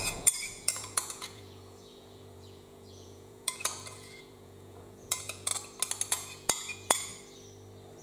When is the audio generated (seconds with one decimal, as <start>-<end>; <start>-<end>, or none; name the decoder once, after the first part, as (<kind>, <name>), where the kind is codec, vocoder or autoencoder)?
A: 0.0-5.5 (vocoder, Vocos); 6.1-7.1